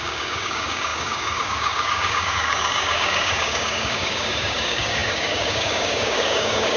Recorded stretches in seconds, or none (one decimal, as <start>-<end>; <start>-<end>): none